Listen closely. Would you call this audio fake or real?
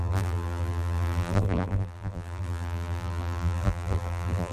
fake